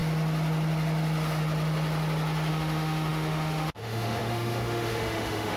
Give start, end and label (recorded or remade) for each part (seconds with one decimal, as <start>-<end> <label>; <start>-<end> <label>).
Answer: 0.0-2.5 recorded; 2.5-5.6 remade